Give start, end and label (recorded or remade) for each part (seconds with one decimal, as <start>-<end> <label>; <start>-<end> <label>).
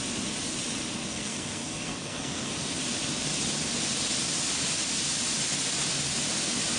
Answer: 0.0-1.1 recorded; 1.1-2.8 remade; 2.8-6.8 recorded